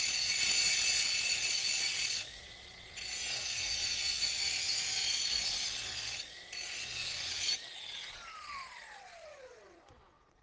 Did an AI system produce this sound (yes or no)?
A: yes